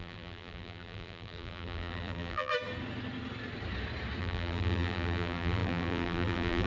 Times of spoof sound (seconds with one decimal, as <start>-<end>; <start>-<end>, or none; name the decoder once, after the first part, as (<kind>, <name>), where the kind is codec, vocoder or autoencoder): 0.0-2.5 (vocoder, BigVGAN v2); 4.2-6.7